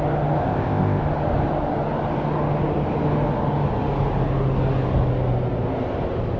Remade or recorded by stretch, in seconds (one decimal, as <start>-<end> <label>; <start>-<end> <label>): 0.0-0.4 recorded; 0.4-1.0 remade; 1.0-6.4 recorded

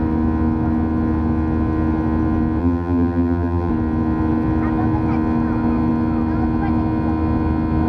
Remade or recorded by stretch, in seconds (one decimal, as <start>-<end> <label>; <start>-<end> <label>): 0.0-2.6 recorded; 2.6-3.7 remade; 3.7-7.9 recorded

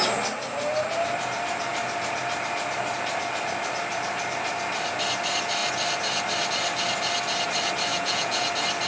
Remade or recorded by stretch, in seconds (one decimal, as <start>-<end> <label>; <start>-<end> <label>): 0.0-7.9 recorded; 7.9-8.5 remade; 8.5-8.9 recorded

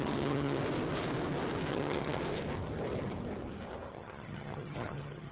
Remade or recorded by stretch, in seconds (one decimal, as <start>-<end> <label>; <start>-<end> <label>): 0.0-0.6 remade; 0.6-1.7 recorded; 1.7-2.2 remade; 2.2-3.9 recorded; 3.9-5.3 remade

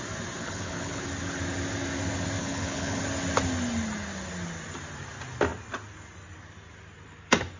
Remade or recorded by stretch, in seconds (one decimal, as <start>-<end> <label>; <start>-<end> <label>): 0.0-0.4 recorded; 0.4-1.0 remade; 1.0-2.4 recorded; 2.4-3.0 remade; 3.0-7.6 recorded

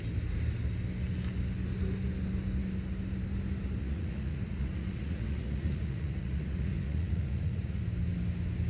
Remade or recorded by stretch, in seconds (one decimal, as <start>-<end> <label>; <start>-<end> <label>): 0.0-3.8 recorded; 3.8-7.8 remade; 7.8-8.7 recorded